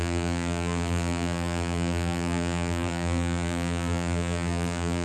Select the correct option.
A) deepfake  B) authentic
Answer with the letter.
A